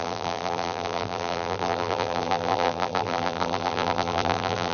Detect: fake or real fake